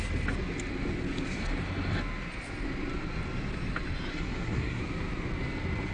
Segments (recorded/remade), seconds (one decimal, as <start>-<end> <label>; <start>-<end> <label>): 0.0-4.1 recorded; 4.1-4.8 remade; 4.8-5.9 recorded